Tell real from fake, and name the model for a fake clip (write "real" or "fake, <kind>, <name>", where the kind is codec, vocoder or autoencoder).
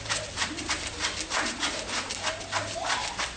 real